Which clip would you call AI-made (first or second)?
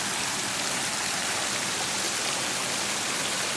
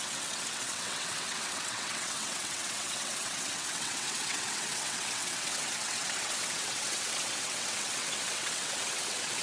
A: second